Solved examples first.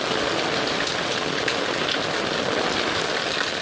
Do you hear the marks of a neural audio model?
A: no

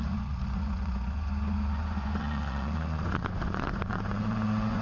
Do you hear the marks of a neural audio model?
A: yes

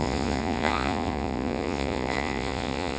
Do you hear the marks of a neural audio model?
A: yes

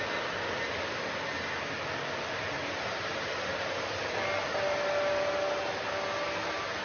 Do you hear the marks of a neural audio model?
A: no